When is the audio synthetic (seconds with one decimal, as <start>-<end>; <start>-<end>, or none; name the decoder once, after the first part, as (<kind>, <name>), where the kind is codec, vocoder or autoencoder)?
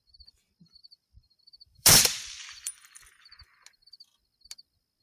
0.8-2.7 (vocoder, BigVGAN v2)